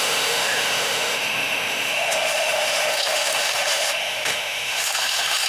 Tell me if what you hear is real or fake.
fake